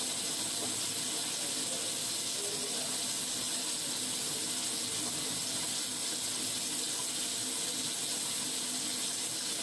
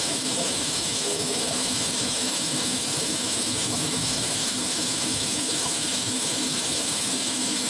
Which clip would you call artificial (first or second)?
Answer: second